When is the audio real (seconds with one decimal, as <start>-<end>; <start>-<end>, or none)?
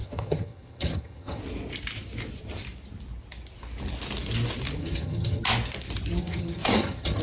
1.4-4.8; 5.4-6.2